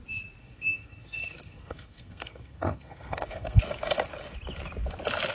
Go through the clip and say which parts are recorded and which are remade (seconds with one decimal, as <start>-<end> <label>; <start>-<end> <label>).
0.0-0.4 recorded; 0.4-3.6 remade; 3.6-5.3 recorded